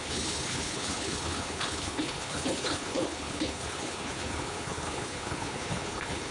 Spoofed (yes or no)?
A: yes